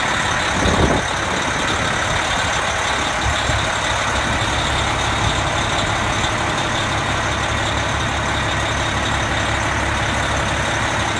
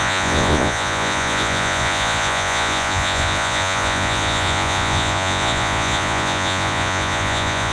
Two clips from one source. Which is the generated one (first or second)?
second